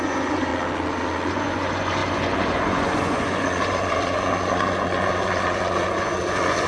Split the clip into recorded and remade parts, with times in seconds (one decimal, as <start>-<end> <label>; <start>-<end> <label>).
0.0-0.5 remade; 0.5-1.3 recorded; 1.3-6.7 remade